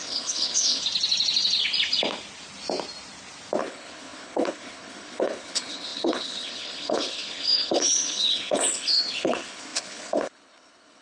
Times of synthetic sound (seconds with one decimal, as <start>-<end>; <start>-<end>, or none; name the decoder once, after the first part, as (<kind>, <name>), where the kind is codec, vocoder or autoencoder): 0.0-0.8 (codec, HILCodec); 3.6-11.0